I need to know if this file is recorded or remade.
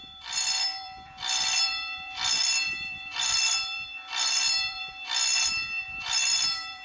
remade